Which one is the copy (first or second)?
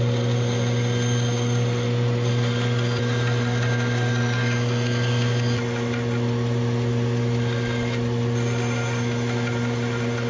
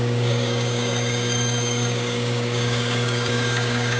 second